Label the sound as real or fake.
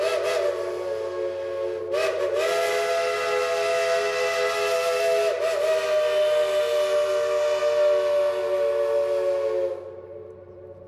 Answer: real